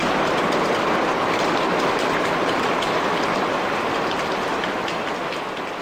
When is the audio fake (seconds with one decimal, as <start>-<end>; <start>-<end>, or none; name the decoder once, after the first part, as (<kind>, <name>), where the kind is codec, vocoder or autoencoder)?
none